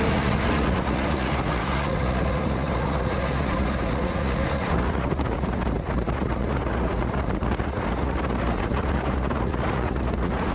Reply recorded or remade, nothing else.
remade